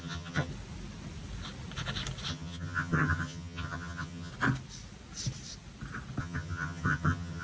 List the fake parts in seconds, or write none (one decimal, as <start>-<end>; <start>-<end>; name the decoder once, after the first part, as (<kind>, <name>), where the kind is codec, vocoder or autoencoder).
0.0-0.5 (vocoder, HiFi-GAN); 2.3-4.3; 6.2-7.4